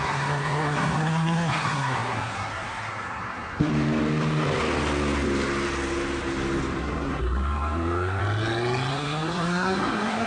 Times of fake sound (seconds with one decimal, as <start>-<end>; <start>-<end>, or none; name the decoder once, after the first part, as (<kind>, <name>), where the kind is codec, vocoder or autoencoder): 0.0-3.7 (codec, SNAC); 6.8-8.2; 8.9-10.3